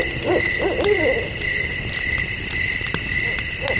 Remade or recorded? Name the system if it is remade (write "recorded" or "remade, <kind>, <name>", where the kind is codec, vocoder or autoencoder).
recorded